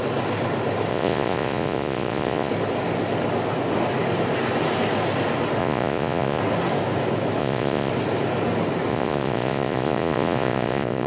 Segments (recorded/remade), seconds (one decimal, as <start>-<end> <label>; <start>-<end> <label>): 0.0-0.9 recorded; 0.9-2.5 remade; 2.5-5.6 recorded; 5.6-6.4 remade; 6.4-7.4 recorded; 7.4-7.9 remade; 7.9-8.9 recorded; 8.9-11.1 remade